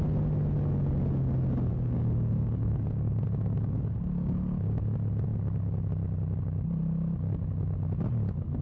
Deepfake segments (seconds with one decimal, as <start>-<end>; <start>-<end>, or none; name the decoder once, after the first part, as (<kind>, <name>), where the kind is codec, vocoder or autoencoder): 1.7-4.8 (codec, DAC)